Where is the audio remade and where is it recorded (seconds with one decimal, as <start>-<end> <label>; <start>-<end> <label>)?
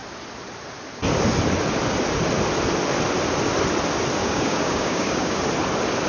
0.0-4.2 recorded; 4.2-5.4 remade; 5.4-6.1 recorded